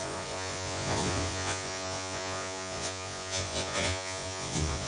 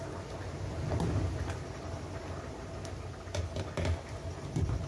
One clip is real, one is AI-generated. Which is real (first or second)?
second